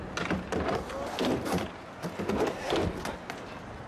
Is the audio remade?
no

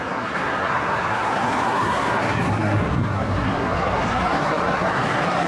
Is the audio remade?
yes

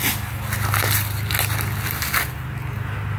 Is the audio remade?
no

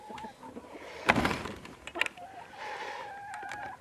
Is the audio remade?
no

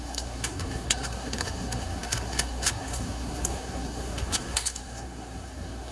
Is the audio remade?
yes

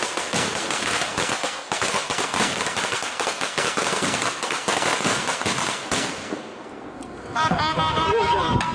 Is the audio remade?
yes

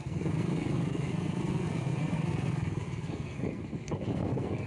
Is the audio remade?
yes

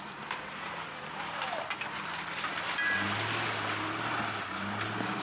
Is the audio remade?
no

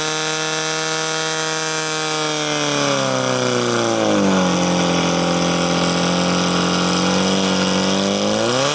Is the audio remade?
no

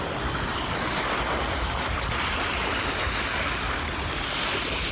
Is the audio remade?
no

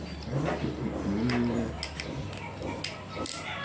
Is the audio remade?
no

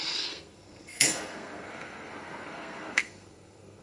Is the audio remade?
yes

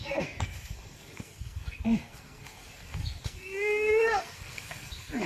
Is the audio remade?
yes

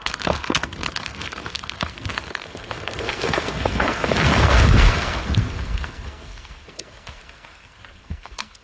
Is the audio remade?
yes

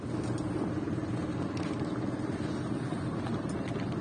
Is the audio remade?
no